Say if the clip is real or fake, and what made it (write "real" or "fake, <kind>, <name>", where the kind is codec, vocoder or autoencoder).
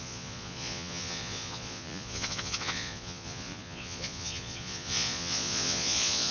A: fake, vocoder, Vocos